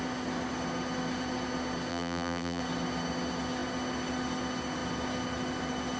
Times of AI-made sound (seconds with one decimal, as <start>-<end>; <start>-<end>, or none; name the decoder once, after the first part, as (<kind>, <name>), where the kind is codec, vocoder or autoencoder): 1.9-2.6 (vocoder, BigVGAN v2)